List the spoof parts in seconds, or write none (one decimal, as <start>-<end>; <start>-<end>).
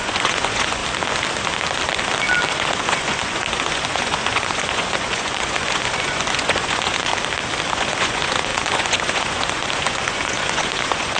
0.0-0.8; 2.5-7.1; 7.7-11.2